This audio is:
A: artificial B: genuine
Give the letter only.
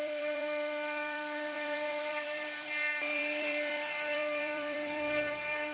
A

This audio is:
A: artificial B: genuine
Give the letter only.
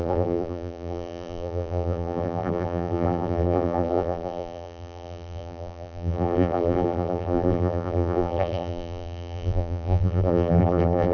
A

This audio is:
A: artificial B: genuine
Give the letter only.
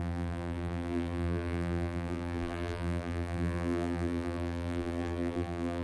A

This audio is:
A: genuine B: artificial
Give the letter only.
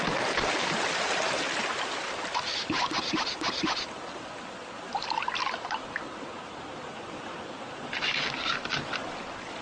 A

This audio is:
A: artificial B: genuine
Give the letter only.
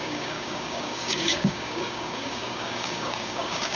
A